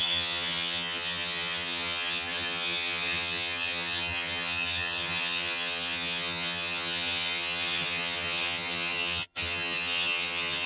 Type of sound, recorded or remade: remade